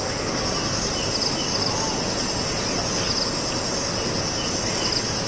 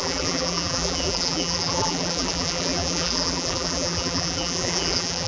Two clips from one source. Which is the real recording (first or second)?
first